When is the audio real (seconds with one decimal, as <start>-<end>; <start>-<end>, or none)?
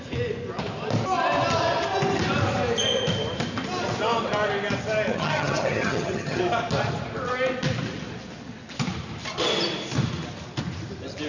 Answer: 0.0-5.1; 6.4-11.3